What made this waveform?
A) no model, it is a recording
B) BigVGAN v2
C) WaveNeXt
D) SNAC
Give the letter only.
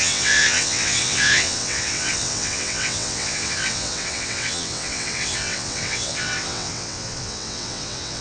C